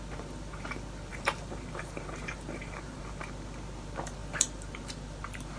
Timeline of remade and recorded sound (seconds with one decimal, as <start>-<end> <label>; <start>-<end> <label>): 0.0-1.1 recorded; 1.1-3.0 remade; 3.0-5.6 recorded